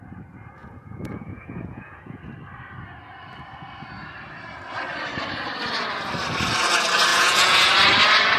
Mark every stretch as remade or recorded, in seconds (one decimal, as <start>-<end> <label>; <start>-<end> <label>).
0.0-0.6 recorded; 0.6-2.2 remade; 2.2-7.1 recorded; 7.1-7.7 remade; 7.7-8.4 recorded